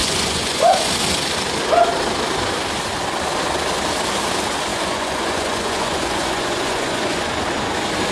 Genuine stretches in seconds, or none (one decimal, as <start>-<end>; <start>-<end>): 0.9-4.7; 7.4-8.1